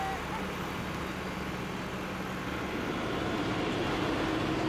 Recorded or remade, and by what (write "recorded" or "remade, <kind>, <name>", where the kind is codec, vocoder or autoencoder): recorded